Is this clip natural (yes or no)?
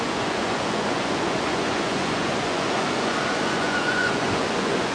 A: no